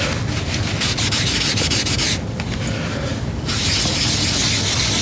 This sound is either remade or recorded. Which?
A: recorded